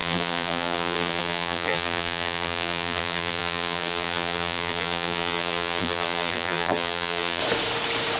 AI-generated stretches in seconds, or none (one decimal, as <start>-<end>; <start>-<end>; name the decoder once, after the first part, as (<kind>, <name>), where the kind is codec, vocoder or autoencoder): 0.0-7.4 (vocoder, BigVGAN v2)